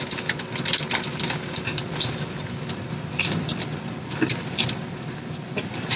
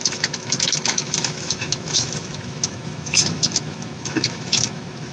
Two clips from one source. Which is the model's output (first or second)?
second